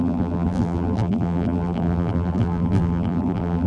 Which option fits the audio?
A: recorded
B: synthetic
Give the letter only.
B